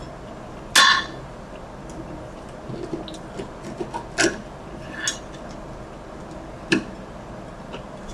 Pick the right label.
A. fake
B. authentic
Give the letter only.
B